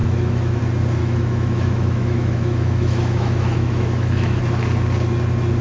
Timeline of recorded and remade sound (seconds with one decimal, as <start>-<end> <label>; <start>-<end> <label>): 0.0-0.6 remade; 0.6-1.0 recorded; 1.0-4.4 remade; 4.4-5.6 recorded